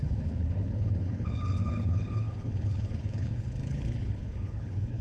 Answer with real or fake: fake